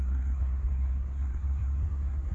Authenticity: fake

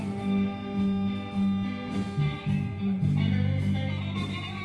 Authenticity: real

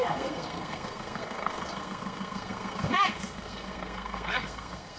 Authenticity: fake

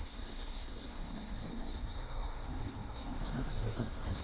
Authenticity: fake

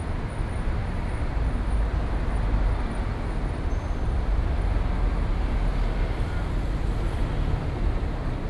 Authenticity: real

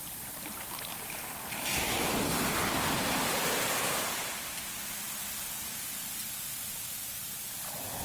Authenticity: real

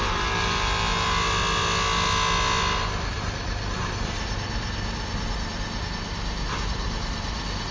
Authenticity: real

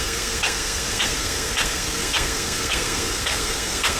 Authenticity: fake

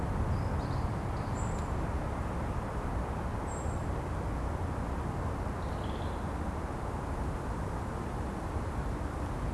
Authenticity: real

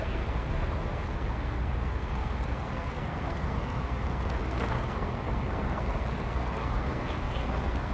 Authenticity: fake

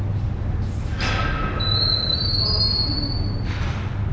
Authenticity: real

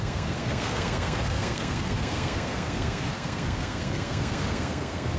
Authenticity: fake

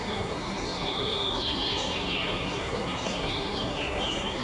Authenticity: fake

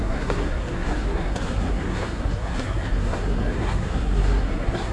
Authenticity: fake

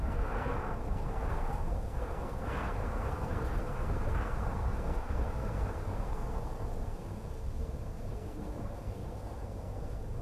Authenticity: fake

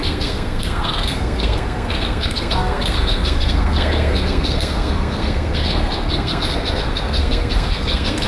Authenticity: fake